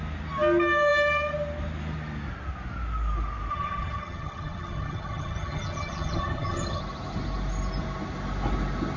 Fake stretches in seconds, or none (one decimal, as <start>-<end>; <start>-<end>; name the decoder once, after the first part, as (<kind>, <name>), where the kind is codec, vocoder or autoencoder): 3.5-6.8 (vocoder, HiFi-GAN)